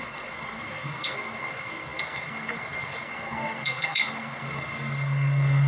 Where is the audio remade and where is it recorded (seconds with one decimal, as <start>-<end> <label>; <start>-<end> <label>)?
0.0-5.7 remade